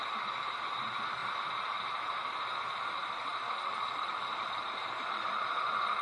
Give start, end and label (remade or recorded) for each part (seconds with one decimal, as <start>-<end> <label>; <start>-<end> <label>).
0.0-1.2 remade; 1.2-2.8 recorded; 2.8-6.0 remade